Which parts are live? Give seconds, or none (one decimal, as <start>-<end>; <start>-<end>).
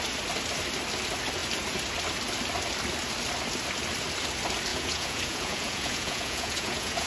0.0-4.7